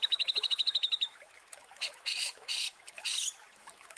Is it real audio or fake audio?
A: fake